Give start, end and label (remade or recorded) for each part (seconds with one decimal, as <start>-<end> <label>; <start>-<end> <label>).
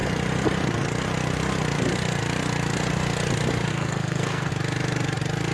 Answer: 0.0-3.7 recorded; 3.7-4.5 remade; 4.5-5.5 recorded